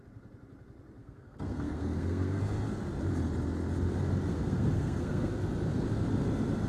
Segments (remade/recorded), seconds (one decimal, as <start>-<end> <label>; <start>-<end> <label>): 0.0-1.0 recorded; 1.0-2.4 remade; 2.4-4.3 recorded; 4.3-5.3 remade; 5.3-6.7 recorded